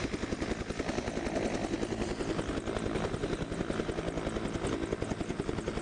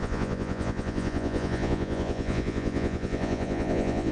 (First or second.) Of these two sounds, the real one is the first